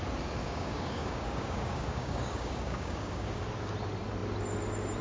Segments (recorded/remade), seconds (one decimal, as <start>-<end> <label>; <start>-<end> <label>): 0.0-0.4 recorded; 0.4-3.4 remade; 3.4-5.0 recorded